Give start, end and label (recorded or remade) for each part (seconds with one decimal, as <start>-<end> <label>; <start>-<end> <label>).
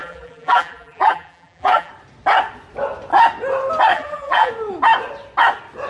0.0-1.9 remade; 1.9-3.9 recorded; 3.9-4.5 remade; 4.5-5.9 recorded